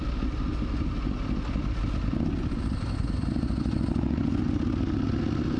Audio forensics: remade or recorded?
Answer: recorded